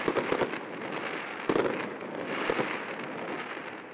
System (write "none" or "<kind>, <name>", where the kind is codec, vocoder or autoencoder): none